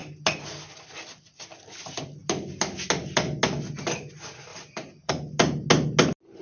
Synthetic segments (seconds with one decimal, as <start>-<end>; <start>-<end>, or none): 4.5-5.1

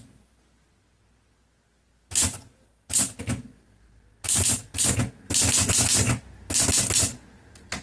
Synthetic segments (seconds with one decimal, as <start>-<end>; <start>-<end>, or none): none

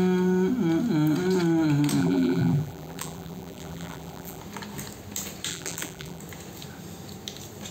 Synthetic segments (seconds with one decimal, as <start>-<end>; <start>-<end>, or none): 2.0-4.4; 5.5-6.2

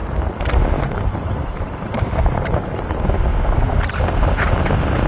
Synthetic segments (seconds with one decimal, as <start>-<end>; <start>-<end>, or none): 0.8-3.3